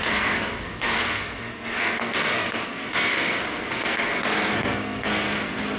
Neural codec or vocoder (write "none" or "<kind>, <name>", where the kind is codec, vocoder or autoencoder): codec, SNAC